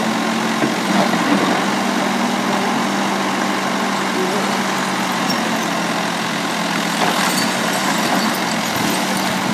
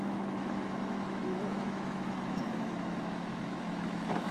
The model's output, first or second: second